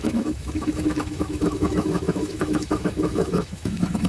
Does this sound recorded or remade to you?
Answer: remade